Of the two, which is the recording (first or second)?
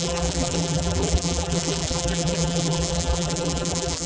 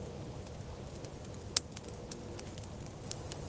second